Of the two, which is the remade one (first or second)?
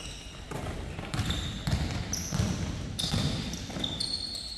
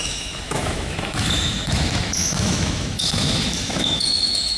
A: second